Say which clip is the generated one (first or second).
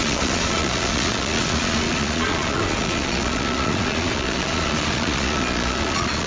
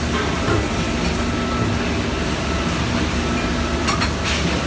first